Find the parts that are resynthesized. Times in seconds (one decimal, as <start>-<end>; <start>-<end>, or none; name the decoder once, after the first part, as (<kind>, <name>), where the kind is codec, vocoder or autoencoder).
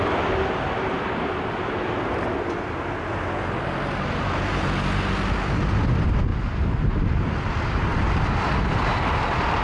none